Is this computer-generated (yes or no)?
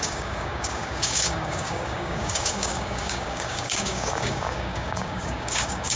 yes